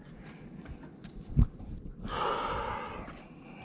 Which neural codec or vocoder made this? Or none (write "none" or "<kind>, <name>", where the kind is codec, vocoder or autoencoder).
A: none